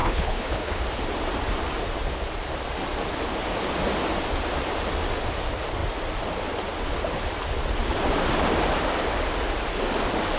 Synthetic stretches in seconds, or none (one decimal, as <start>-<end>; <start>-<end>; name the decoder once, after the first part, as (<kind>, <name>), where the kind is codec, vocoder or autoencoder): 0.0-0.8 (codec, HILCodec)